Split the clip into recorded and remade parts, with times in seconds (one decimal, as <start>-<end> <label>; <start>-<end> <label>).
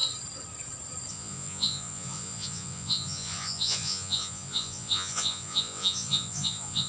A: 0.0-1.1 recorded; 1.1-6.9 remade